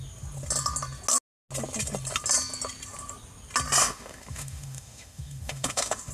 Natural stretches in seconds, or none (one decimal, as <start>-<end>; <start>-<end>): 0.0-3.8